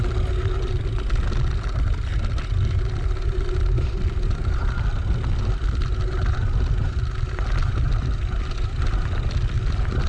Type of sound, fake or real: real